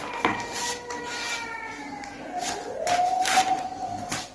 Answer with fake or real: real